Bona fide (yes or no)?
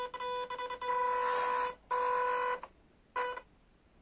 yes